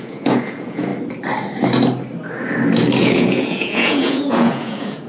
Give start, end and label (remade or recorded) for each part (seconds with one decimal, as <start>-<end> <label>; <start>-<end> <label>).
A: 0.0-0.9 remade; 0.9-3.0 recorded; 3.0-5.1 remade

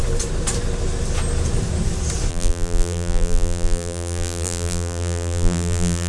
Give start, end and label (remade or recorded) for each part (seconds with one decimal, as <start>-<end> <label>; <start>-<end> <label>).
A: 0.0-2.3 recorded; 2.3-6.1 remade

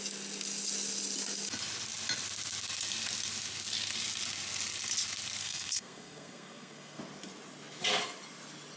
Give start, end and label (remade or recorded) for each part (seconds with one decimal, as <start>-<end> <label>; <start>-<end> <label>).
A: 0.0-5.4 recorded; 5.4-7.0 remade; 7.0-8.8 recorded

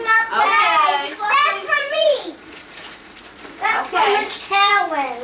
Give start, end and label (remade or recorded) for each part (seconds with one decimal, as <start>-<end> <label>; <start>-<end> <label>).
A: 0.0-1.6 recorded; 1.6-4.7 remade; 4.7-5.2 recorded

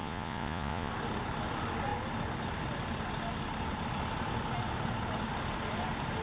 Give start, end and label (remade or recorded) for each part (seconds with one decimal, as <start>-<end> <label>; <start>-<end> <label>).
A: 0.0-0.9 remade; 0.9-6.2 recorded

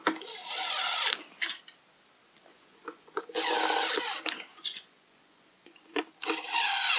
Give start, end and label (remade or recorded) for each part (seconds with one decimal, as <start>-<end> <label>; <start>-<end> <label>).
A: 0.0-2.5 recorded; 2.5-3.2 remade; 3.2-4.5 recorded; 4.5-6.0 remade; 6.0-7.0 recorded